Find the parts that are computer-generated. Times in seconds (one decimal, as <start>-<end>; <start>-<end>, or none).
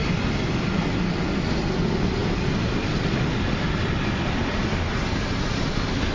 none